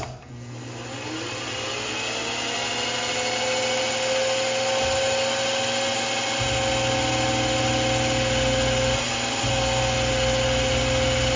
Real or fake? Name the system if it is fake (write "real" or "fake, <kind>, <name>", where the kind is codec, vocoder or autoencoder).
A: real